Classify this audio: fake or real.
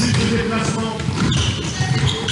real